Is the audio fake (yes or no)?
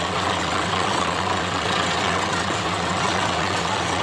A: yes